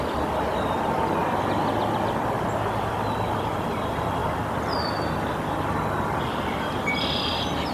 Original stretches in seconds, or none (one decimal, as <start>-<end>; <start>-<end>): 1.2-2.2; 4.2-6.9